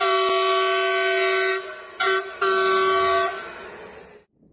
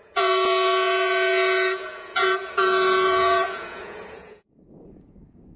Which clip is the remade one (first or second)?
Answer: second